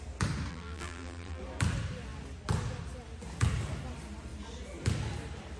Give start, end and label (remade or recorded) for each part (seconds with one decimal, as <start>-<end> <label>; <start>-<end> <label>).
0.0-0.5 recorded; 0.5-1.4 remade; 1.4-5.6 recorded